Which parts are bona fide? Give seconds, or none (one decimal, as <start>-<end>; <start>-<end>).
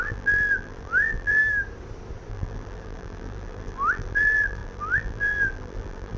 1.4-2.3